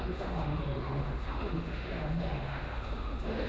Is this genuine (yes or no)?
no